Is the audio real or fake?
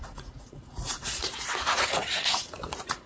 fake